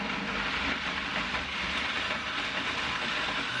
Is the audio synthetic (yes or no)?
no